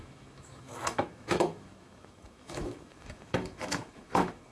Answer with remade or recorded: remade